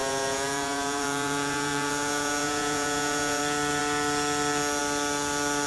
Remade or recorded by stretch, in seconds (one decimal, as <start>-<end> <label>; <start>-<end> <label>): 0.0-3.4 remade; 3.4-5.7 recorded